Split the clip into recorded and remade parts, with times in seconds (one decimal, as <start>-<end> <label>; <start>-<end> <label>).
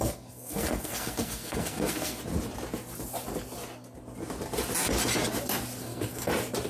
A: 0.0-2.2 remade; 2.2-5.8 recorded; 5.8-6.3 remade; 6.3-6.7 recorded